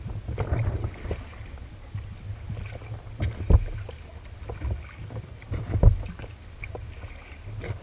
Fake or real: real